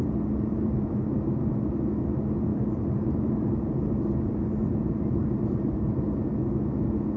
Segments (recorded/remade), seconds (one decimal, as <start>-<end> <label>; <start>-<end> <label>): 0.0-0.5 recorded; 0.5-1.5 remade; 1.5-2.5 recorded; 2.5-6.3 remade; 6.3-7.2 recorded